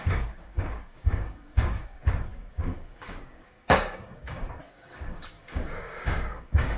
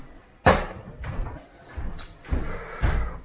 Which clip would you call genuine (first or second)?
second